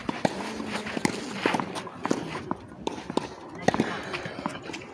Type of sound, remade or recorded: recorded